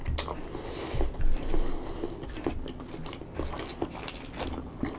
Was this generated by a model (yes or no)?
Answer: no